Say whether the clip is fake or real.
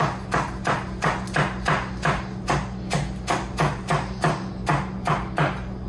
real